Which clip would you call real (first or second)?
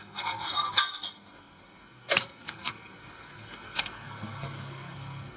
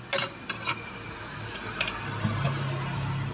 second